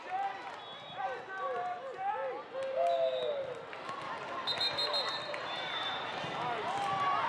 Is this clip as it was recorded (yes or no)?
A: yes